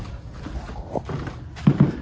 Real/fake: real